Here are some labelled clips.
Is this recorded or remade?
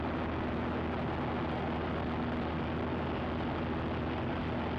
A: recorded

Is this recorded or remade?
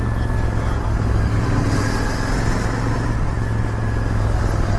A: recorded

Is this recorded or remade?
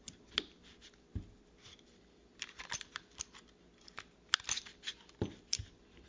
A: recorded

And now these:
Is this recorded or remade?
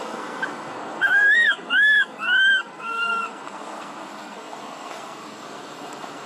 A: remade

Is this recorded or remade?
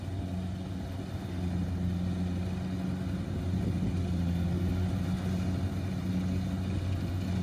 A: recorded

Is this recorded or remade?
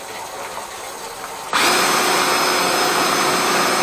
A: recorded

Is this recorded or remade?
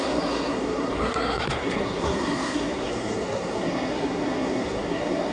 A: remade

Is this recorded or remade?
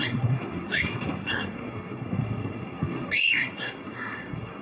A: remade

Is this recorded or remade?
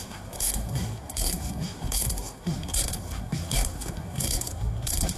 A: remade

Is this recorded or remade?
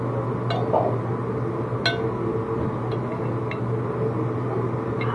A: recorded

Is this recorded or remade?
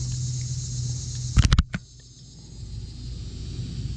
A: recorded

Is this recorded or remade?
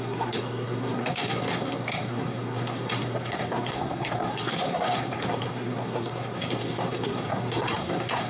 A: remade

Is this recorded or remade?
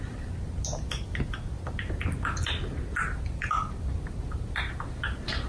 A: recorded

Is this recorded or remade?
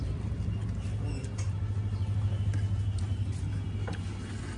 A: recorded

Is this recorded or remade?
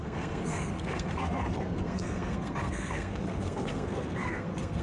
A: remade